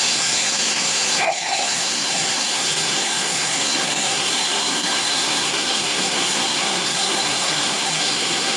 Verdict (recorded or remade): remade